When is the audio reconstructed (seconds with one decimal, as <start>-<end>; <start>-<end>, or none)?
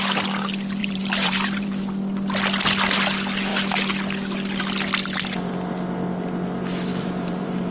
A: 0.8-1.8; 6.9-7.7